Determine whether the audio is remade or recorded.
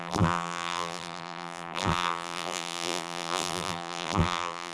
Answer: remade